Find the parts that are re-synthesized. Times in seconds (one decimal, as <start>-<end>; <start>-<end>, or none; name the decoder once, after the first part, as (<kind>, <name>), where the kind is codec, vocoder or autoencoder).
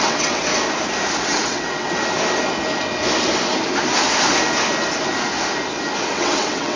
0.0-0.5 (vocoder, WaveNeXt); 1.2-2.0; 6.1-6.8